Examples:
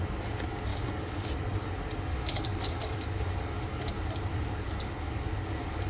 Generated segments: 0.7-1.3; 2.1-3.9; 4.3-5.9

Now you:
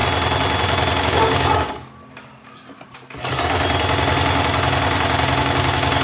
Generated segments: 1.0-1.8; 5.4-6.0

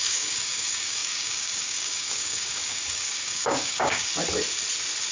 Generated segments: 0.0-4.1

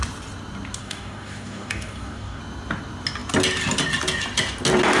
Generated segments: 0.8-2.4

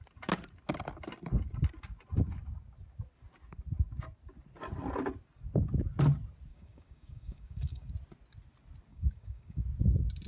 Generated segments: 6.5-7.9; 8.9-9.6

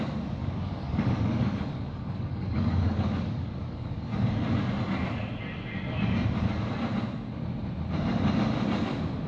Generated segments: 0.4-4.3

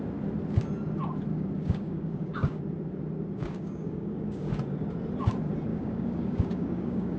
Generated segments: 1.3-2.6; 3.4-4.6; 5.7-7.2

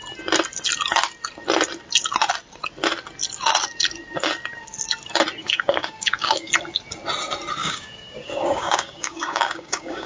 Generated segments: 5.4-6.5; 7.6-10.1